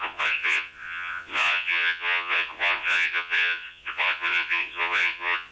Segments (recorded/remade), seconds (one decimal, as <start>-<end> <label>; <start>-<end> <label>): 0.0-5.5 remade